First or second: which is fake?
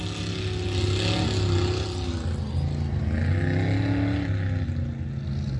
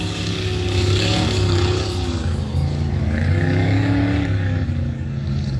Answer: second